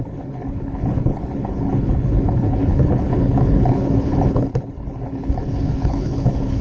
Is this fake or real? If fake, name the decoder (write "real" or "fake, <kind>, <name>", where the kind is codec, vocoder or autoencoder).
fake, codec, HILCodec